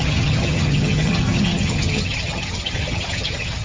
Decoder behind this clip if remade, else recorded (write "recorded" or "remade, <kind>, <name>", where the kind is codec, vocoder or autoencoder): remade, vocoder, HiFi-GAN